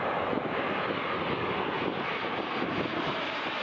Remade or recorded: recorded